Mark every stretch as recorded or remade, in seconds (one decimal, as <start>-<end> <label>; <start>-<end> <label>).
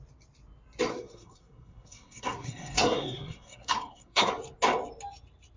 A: 0.0-0.9 recorded; 0.9-4.3 remade; 4.3-5.6 recorded